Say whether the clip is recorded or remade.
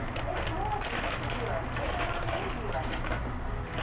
recorded